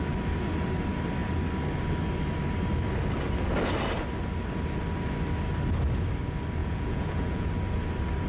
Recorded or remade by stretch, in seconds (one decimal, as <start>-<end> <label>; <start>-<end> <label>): 0.0-6.6 recorded; 6.6-7.5 remade; 7.5-8.3 recorded